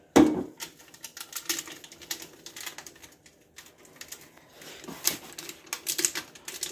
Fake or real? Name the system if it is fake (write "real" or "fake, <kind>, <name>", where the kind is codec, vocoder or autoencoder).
real